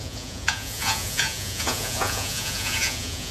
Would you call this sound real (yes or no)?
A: no